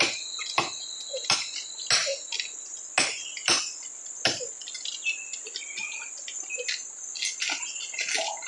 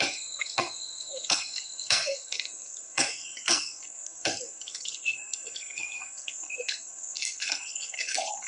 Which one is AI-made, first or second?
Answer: second